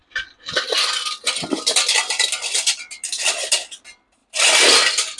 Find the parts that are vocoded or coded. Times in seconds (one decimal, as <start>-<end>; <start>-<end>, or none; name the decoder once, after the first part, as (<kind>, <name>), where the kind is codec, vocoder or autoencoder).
none